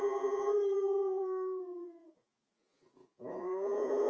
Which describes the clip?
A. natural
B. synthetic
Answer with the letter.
B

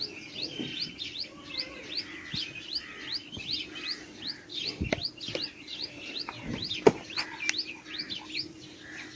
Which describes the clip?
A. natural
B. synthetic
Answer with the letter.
A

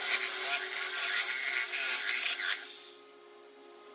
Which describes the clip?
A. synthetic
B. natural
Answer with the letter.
B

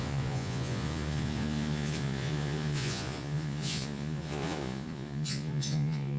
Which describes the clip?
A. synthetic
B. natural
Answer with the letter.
A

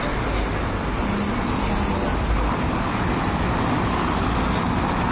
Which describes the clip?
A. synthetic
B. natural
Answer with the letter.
B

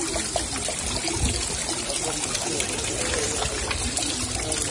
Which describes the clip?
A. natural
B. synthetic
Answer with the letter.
A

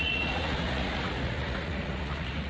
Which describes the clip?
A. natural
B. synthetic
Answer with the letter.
B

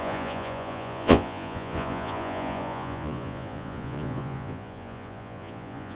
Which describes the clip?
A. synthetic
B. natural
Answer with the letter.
A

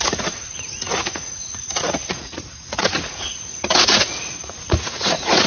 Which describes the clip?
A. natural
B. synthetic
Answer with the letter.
B